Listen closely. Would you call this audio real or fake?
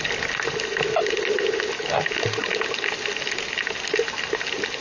real